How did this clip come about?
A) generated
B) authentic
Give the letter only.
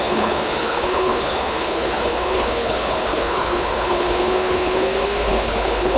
A